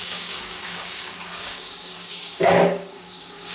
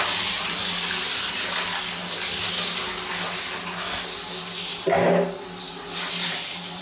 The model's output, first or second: first